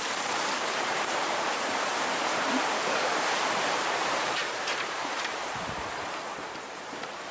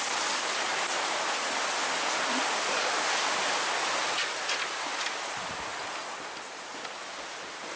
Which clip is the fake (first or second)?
first